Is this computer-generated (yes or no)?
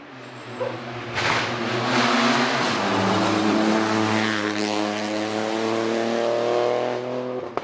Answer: no